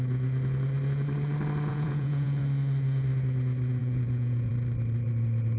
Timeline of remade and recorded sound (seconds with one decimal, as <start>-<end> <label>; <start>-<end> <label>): 0.0-1.7 recorded; 1.7-2.4 remade; 2.4-3.8 recorded; 3.8-4.5 remade; 4.5-5.6 recorded